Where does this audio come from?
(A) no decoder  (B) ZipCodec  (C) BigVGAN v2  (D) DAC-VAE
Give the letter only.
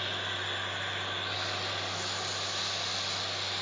A